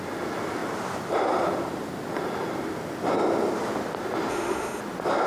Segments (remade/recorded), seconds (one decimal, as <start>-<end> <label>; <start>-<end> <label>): 0.0-4.3 recorded; 4.3-4.8 remade; 4.8-5.3 recorded